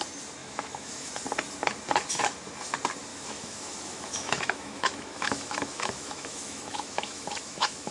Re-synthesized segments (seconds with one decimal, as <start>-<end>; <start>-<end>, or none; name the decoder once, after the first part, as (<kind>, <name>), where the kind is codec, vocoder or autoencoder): 0.4-1.1 (autoencoder, DAC-VAE); 3.1-7.9